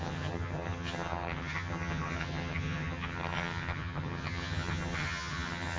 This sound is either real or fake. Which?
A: fake